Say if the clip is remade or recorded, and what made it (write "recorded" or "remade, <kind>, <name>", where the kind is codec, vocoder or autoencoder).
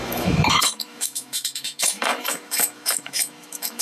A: remade, autoencoder, DAC-VAE